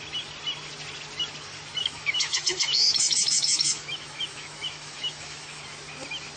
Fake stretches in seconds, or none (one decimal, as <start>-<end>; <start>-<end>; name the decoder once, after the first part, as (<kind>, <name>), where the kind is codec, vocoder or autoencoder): 1.8-5.6 (autoencoder, DAC-VAE)